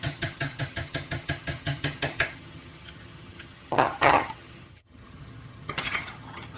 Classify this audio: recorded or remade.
remade